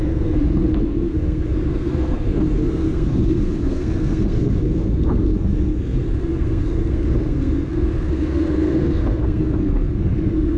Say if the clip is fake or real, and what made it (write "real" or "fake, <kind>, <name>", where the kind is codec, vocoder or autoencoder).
fake, codec, SNAC